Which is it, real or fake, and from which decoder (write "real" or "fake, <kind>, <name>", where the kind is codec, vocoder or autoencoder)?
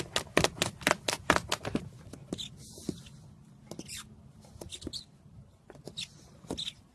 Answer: real